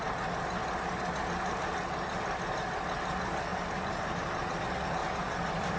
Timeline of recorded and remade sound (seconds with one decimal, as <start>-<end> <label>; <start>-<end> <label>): 0.0-3.5 recorded; 3.5-4.6 remade; 4.6-5.0 recorded; 5.0-5.8 remade